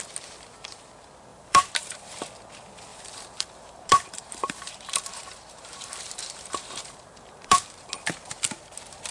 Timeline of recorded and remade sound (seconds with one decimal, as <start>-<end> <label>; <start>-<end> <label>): 0.0-1.3 recorded; 1.3-2.2 remade; 2.2-2.9 recorded; 2.9-7.9 remade; 7.9-9.1 recorded